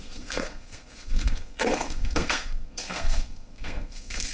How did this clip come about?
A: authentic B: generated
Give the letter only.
B